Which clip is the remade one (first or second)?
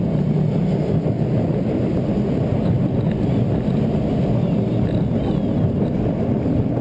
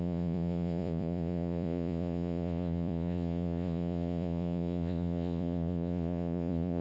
second